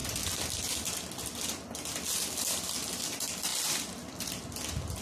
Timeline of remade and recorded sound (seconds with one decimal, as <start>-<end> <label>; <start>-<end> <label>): 0.0-5.0 recorded